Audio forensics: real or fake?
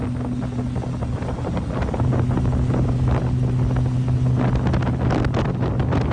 real